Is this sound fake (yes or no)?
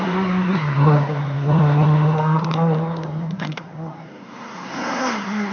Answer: yes